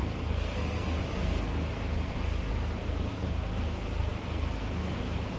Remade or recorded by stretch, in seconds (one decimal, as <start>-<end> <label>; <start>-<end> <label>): 0.0-5.4 remade